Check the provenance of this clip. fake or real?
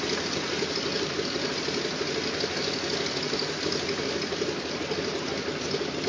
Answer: real